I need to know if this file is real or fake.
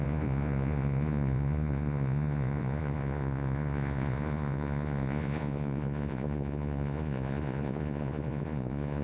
fake